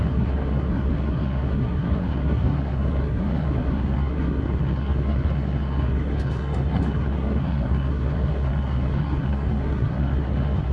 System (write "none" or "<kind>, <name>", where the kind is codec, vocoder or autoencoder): codec, SNAC